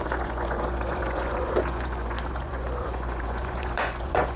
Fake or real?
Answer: fake